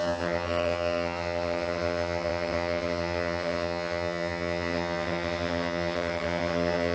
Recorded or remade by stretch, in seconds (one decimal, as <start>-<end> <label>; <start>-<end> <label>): 0.0-6.9 remade